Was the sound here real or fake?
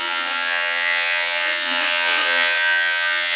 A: fake